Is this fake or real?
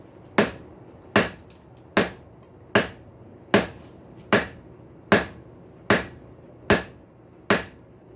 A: real